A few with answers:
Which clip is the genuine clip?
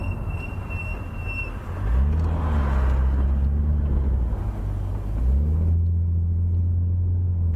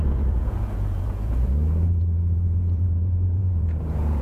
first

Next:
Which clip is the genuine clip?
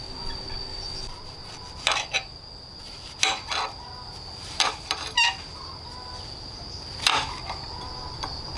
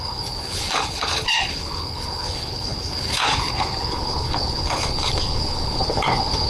first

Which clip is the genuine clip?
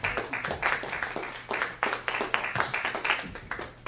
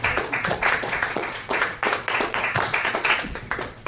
first